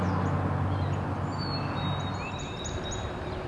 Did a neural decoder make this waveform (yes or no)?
no